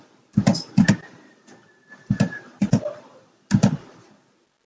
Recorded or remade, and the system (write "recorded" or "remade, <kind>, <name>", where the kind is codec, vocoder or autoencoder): recorded